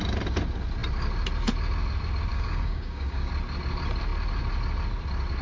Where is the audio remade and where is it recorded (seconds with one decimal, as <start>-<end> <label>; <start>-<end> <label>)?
0.0-2.3 recorded; 2.3-3.3 remade; 3.3-5.4 recorded